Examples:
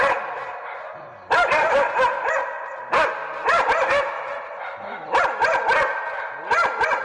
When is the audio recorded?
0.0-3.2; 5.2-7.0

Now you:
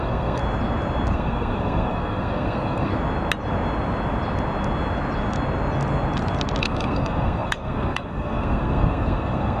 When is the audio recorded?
0.4-1.1; 2.9-6.6

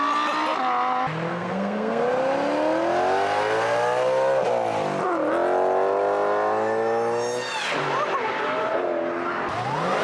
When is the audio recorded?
0.0-1.3; 2.0-10.0

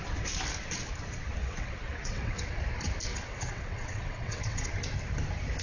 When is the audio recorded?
0.0-1.4; 2.6-3.1; 4.7-5.6

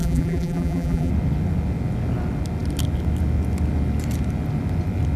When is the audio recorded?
1.1-5.2

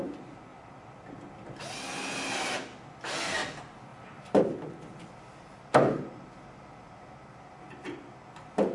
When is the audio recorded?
0.0-3.9; 4.4-8.7

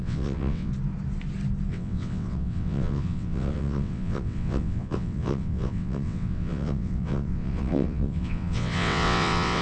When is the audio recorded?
0.7-1.7

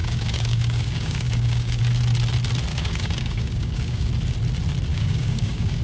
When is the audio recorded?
1.8-2.7; 4.1-4.9